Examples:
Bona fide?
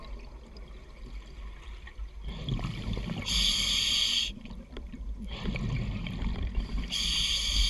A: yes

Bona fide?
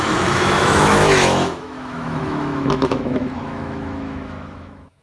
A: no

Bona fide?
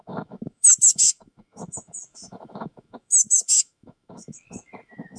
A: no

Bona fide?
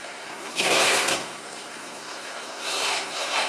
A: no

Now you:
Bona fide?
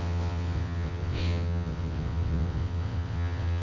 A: no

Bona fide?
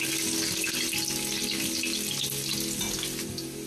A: yes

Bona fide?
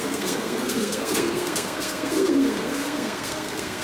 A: no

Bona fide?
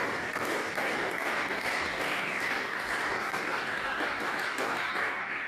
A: no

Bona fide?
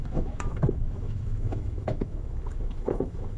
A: no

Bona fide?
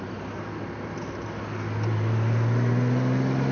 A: yes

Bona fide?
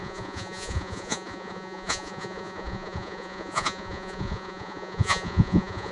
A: no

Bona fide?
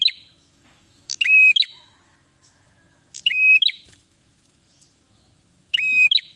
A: no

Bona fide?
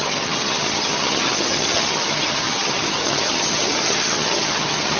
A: no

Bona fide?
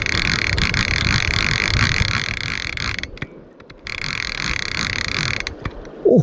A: yes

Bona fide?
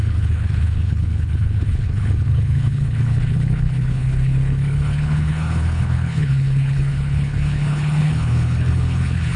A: no